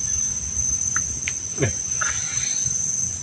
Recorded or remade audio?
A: recorded